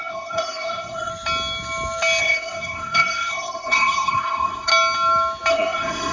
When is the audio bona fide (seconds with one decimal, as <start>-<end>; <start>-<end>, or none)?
1.1-2.2; 4.7-5.5